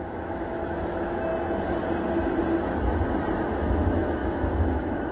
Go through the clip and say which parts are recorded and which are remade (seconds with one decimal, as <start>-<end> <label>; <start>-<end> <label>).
0.0-1.3 remade; 1.3-3.4 recorded; 3.4-5.1 remade